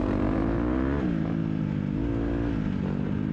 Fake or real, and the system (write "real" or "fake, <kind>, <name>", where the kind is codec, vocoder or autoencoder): real